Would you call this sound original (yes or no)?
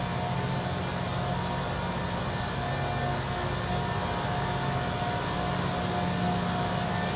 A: yes